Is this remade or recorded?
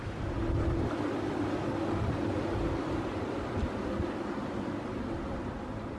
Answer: recorded